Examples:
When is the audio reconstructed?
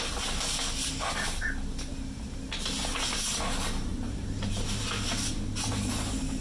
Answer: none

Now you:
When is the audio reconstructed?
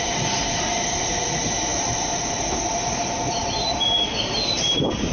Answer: 0.0-5.1 (vocoder, BigVGAN v2)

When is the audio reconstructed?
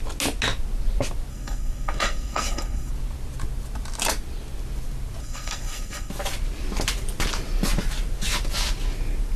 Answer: 1.3-2.9 (codec, SNAC); 5.2-6.1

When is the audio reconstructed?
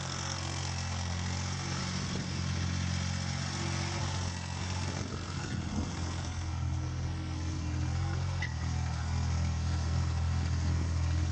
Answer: 0.0-1.8 (codec, SNAC); 4.0-11.3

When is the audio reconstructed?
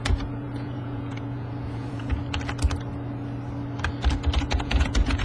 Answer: 0.0-2.2 (vocoder, Vocos); 4.4-5.2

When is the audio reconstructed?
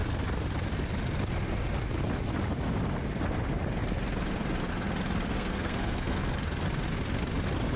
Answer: 5.3-6.2 (codec, SNAC)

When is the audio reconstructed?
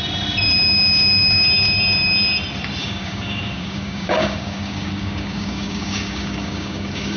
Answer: 2.8-7.2 (codec, DAC)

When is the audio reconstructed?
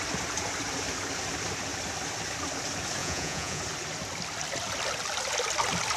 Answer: 3.0-3.6 (vocoder, Vocos)